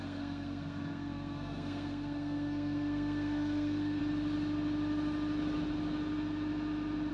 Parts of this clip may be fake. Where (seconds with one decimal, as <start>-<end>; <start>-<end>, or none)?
0.0-4.0